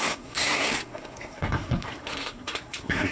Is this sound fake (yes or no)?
yes